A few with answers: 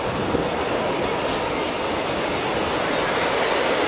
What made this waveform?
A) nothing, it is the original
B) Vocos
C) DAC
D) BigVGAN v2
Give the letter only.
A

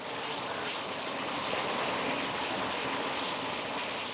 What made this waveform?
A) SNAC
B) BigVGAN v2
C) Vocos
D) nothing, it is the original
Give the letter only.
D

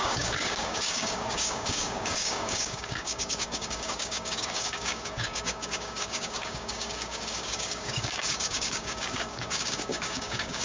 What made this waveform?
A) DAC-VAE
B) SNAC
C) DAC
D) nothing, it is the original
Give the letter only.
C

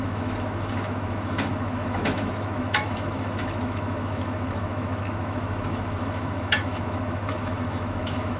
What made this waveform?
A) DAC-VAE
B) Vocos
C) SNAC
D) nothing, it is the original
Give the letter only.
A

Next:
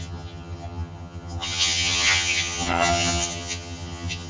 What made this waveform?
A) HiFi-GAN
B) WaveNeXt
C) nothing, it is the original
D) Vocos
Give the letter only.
A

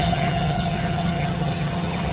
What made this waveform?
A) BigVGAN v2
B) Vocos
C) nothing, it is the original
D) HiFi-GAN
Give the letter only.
D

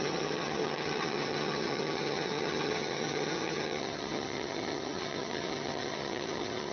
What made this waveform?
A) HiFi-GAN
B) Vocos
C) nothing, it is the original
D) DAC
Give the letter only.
A